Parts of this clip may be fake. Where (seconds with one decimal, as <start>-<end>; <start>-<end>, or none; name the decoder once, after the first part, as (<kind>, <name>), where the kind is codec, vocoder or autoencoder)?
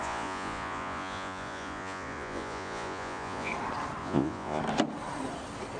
0.0-3.5 (vocoder, Vocos); 4.0-4.6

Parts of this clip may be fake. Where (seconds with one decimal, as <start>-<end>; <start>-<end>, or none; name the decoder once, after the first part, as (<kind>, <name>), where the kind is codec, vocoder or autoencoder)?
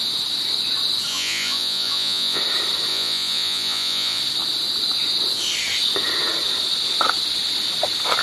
1.1-2.4 (vocoder, Vocos); 2.9-4.2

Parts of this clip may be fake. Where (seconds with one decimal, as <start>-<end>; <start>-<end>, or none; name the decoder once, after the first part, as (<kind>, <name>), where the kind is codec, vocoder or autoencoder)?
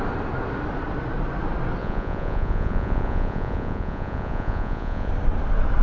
1.8-5.1 (vocoder, Vocos)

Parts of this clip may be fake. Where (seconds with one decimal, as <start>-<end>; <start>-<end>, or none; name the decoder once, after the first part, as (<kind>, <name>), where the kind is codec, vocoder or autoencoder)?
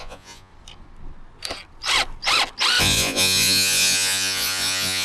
0.0-0.5 (vocoder, Vocos); 2.8-5.0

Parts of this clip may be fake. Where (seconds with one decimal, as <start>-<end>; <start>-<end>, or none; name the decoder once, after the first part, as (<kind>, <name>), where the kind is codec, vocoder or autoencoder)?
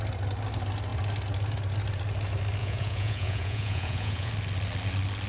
2.6-4.3 (vocoder, Vocos)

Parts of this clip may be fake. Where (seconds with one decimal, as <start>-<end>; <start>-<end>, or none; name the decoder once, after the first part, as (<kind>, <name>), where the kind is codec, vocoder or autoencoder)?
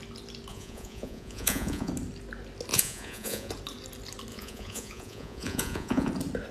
0.5-1.9 (vocoder, Vocos); 2.7-3.5; 4.3-6.1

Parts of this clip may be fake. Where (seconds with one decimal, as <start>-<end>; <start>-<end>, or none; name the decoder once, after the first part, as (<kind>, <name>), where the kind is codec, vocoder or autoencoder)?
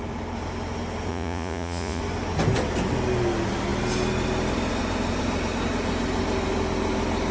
1.1-2.0 (vocoder, Vocos)